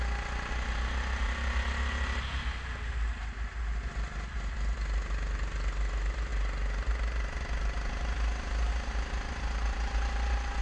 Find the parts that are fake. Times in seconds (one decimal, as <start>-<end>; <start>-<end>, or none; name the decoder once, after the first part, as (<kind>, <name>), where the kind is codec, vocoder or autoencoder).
none